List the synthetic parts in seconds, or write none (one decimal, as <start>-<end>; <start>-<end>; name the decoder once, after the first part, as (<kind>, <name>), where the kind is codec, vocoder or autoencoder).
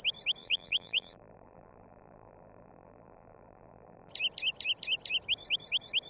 0.4-4.1 (vocoder, BigVGAN v2)